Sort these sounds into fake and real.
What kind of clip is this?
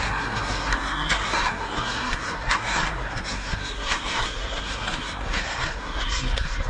fake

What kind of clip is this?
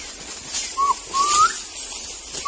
real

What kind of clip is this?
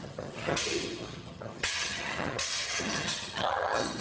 fake